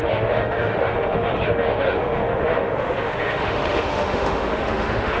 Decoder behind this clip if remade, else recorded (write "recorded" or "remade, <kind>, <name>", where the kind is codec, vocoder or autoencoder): remade, autoencoder, DAC-VAE